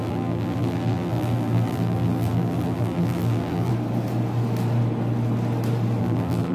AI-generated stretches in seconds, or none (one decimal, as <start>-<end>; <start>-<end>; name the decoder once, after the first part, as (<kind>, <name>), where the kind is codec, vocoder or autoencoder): 0.0-3.7 (vocoder, BigVGAN v2); 6.0-6.5